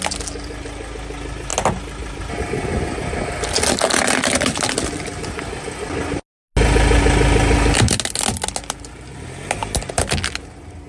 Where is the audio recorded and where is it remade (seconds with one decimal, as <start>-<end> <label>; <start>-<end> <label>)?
0.0-10.9 recorded